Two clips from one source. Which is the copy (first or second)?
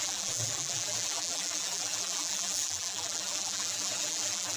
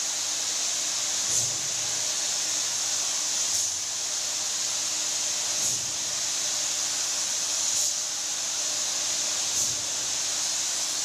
first